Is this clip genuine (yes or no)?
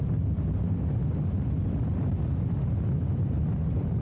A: yes